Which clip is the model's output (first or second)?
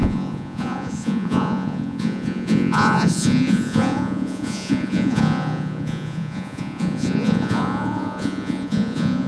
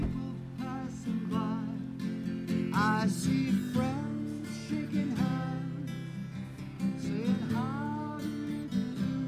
first